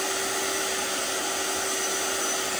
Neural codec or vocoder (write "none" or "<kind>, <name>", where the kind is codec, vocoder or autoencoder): none